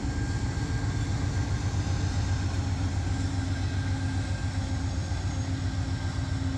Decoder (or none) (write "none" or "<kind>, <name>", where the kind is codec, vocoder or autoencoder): none